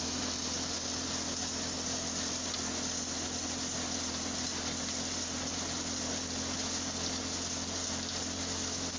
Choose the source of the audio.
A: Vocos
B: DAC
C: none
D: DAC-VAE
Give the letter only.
C